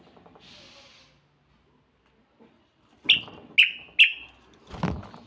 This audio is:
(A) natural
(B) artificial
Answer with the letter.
A